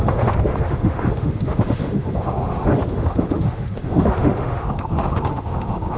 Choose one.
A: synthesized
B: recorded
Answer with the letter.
A